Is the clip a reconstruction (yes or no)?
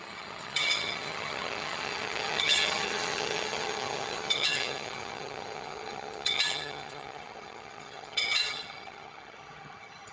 yes